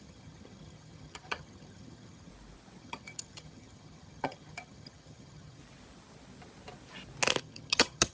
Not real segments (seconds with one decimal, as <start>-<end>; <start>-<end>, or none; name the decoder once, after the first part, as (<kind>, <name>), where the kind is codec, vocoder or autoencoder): 0.0-2.3 (vocoder, HiFi-GAN); 2.8-5.6; 7.4-8.1